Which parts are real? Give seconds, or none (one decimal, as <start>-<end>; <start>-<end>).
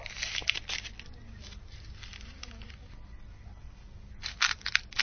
0.0-5.0